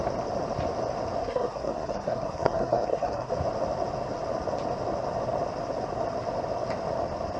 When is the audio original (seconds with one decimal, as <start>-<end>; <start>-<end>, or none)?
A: 0.0-1.2; 3.3-7.4